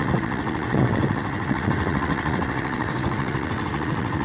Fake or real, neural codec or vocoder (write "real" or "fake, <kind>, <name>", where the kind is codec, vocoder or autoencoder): fake, vocoder, WaveNeXt